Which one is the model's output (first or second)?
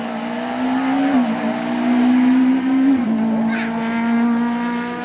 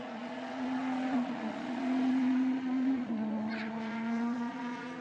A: second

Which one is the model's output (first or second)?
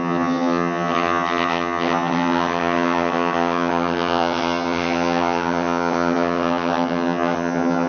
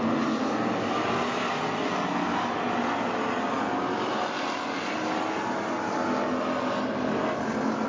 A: first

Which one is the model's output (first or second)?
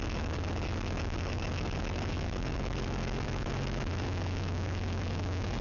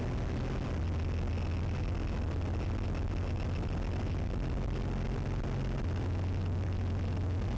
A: first